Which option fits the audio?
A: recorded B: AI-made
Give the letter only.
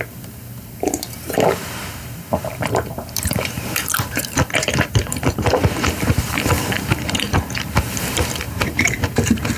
B